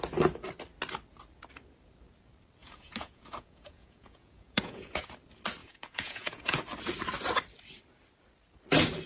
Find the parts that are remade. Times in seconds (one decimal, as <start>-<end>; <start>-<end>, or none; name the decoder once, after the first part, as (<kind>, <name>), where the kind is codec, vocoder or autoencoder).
2.6-5.0 (vocoder, Vocos); 5.6-6.6